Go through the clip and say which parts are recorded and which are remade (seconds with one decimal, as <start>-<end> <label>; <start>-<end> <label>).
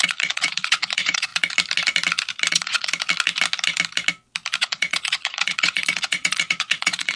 0.0-1.3 remade; 1.3-2.5 recorded; 2.5-2.9 remade; 2.9-4.6 recorded; 4.6-7.2 remade